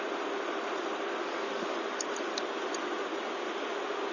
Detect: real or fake real